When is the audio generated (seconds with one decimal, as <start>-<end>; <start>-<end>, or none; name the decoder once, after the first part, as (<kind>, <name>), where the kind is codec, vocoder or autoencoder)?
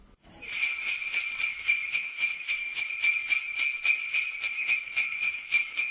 1.5-2.9 (autoencoder, DAC-VAE); 4.5-5.9